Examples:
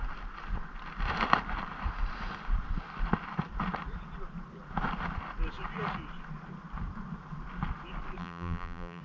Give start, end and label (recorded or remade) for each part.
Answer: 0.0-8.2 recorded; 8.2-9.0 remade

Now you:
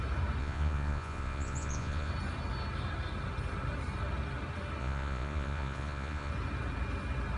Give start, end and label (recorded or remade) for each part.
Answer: 0.0-0.4 recorded; 0.4-2.1 remade; 2.1-4.8 recorded; 4.8-6.3 remade; 6.3-7.4 recorded